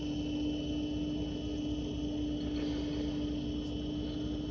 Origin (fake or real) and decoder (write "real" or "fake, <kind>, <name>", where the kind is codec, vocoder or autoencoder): real